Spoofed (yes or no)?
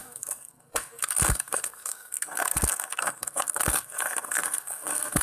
yes